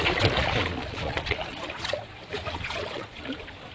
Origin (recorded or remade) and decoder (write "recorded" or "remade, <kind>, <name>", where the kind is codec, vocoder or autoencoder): remade, vocoder, Vocos